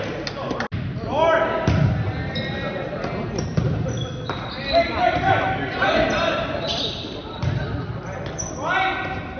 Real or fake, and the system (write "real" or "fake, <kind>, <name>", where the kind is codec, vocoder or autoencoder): real